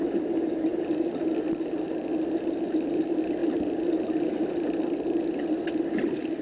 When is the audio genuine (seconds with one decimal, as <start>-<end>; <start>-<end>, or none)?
0.0-6.4